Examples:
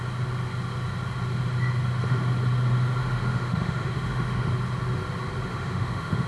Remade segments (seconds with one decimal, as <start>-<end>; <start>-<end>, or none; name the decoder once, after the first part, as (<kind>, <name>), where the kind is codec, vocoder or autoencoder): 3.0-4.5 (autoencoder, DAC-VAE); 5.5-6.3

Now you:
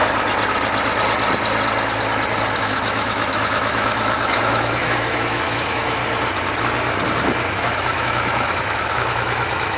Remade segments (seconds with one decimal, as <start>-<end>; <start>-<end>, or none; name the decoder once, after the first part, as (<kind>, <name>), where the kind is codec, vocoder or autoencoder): 2.6-6.0 (autoencoder, DAC-VAE); 7.5-9.8

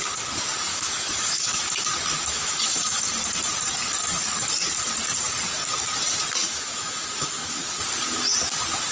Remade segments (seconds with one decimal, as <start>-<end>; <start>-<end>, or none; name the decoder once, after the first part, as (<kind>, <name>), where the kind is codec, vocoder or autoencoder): 0.7-1.6 (autoencoder, DAC-VAE); 2.3-3.0; 6.4-7.8

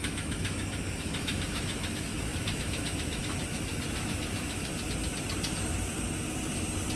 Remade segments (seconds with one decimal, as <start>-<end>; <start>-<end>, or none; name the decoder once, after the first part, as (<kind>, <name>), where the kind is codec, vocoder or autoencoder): 0.0-4.7 (autoencoder, DAC-VAE)

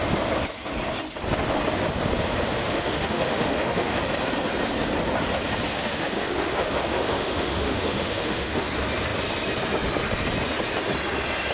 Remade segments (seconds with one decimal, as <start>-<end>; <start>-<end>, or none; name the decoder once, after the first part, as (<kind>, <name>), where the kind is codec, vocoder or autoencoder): 2.7-4.0 (autoencoder, DAC-VAE); 5.7-8.7